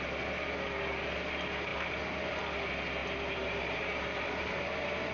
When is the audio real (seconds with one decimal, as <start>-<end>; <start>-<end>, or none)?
0.0-3.0; 4.6-5.1